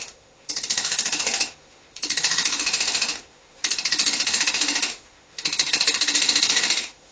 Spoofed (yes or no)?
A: yes